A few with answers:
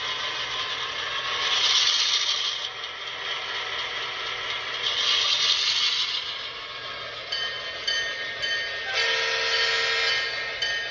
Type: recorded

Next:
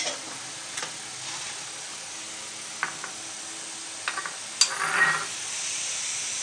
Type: recorded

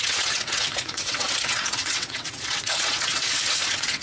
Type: remade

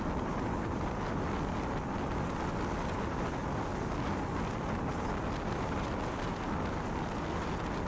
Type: recorded